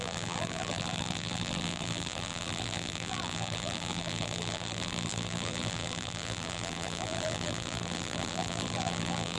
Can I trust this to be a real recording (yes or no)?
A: no